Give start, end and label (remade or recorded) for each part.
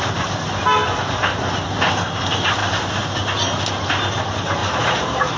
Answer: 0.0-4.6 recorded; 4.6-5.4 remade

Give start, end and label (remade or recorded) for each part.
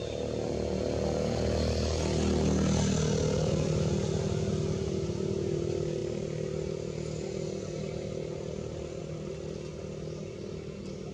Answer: 0.0-11.1 recorded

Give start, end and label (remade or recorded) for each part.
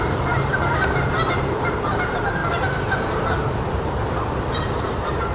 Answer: 0.0-2.4 remade; 2.4-3.7 recorded; 3.7-5.3 remade